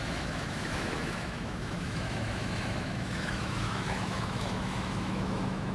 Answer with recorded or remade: remade